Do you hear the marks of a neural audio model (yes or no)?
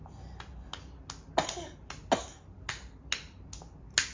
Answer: no